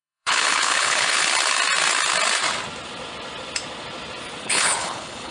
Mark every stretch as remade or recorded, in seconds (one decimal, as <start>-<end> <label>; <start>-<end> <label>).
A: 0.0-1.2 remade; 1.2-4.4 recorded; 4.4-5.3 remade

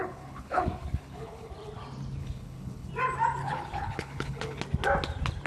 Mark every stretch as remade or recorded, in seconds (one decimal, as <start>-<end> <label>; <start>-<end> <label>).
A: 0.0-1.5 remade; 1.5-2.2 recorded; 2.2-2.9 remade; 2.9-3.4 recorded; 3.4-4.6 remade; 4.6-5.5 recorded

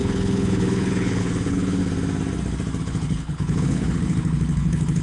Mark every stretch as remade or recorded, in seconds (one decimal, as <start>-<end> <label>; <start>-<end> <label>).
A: 0.0-1.8 remade; 1.8-2.8 recorded; 2.8-5.0 remade

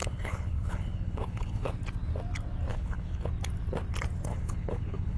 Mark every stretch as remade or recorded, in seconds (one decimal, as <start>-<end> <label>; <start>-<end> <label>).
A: 0.0-1.7 remade; 1.7-2.7 recorded; 2.7-3.3 remade; 3.3-4.3 recorded; 4.3-5.2 remade

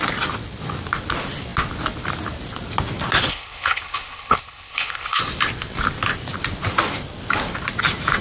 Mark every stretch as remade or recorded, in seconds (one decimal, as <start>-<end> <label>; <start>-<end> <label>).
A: 0.0-3.3 recorded; 3.3-5.2 remade; 5.2-8.2 recorded

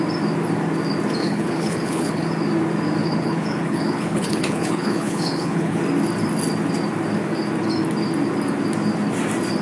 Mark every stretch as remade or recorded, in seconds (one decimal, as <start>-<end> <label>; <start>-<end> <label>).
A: 0.0-1.2 recorded; 1.2-2.3 remade; 2.3-3.0 recorded; 3.0-5.8 remade; 5.8-9.6 recorded

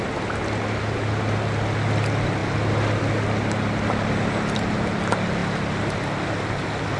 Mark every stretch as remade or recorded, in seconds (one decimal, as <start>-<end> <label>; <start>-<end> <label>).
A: 0.0-7.0 recorded